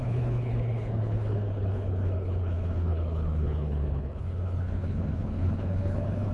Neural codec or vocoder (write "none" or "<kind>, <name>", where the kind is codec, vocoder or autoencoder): codec, HILCodec